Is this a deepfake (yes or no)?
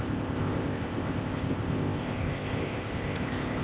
yes